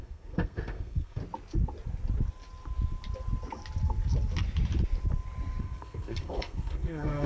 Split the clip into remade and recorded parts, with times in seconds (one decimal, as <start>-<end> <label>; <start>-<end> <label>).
0.0-1.2 remade; 1.2-5.6 recorded; 5.6-7.3 remade